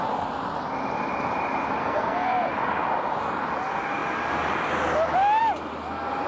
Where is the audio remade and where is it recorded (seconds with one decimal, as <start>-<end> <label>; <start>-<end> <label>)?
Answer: 0.0-1.8 recorded; 1.8-2.5 remade; 2.5-6.3 recorded